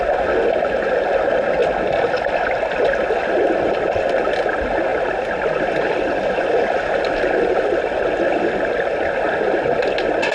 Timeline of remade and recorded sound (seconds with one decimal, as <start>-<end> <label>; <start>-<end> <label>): 0.0-10.3 recorded

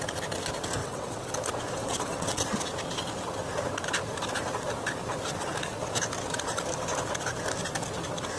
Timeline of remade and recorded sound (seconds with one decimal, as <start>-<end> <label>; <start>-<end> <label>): 0.0-0.8 recorded; 0.8-1.3 remade; 1.3-1.8 recorded; 1.8-2.4 remade; 2.4-8.4 recorded

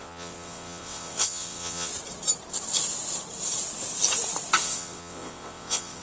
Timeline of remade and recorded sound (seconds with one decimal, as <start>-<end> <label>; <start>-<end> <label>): 0.0-1.9 remade; 1.9-4.6 recorded; 4.6-6.0 remade

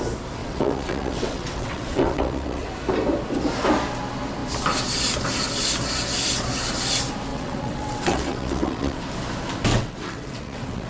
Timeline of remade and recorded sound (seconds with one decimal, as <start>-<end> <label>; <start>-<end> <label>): 0.0-0.4 recorded; 0.4-2.7 remade; 2.7-7.3 recorded; 7.3-9.0 remade; 9.0-9.7 recorded; 9.7-10.9 remade